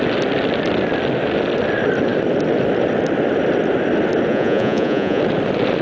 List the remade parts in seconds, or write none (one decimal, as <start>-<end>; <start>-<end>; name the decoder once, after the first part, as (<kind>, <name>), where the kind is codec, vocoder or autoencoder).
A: 4.3-5.2 (vocoder, Vocos)